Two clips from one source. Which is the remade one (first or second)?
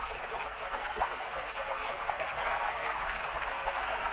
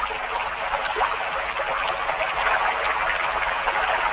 first